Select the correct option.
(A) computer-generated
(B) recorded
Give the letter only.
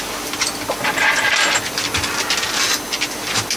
B